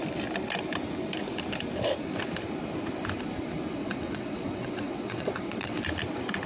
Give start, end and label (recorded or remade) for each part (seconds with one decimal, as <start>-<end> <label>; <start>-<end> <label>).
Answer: 0.0-3.8 recorded; 3.8-5.8 remade; 5.8-6.5 recorded